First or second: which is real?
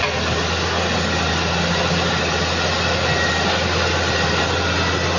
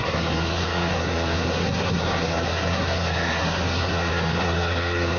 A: first